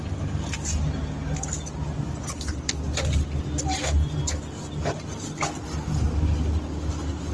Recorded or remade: recorded